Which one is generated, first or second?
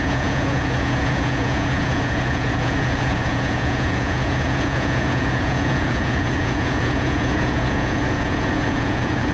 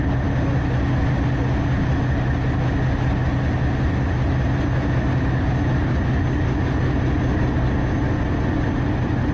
first